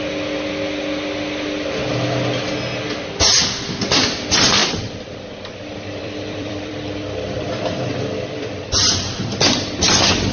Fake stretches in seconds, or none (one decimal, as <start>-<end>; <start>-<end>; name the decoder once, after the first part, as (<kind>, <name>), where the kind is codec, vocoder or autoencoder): 4.6-8.9 (vocoder, BigVGAN v2)